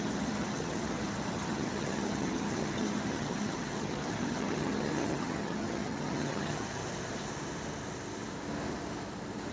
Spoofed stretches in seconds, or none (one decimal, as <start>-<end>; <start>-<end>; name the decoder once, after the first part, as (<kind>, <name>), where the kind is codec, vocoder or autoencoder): 0.0-6.8 (vocoder, HiFi-GAN)